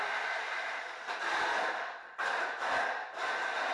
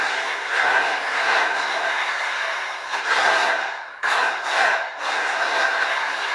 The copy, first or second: second